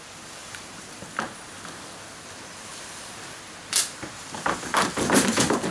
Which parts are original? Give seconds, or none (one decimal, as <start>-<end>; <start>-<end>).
0.0-5.7